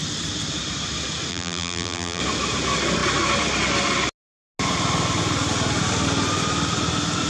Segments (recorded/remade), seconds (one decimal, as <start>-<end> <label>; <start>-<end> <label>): 0.0-1.3 recorded; 1.3-2.2 remade; 2.2-7.3 recorded